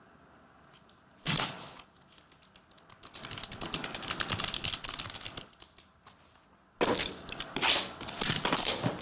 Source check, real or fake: real